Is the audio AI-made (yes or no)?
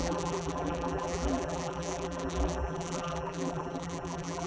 yes